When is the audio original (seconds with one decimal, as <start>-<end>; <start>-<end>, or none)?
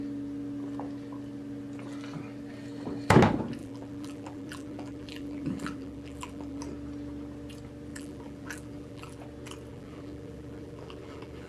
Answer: 0.0-3.6; 6.6-7.9; 9.2-9.7